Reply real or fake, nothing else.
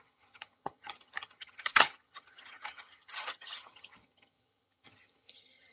fake